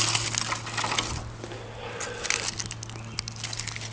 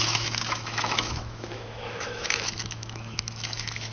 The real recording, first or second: first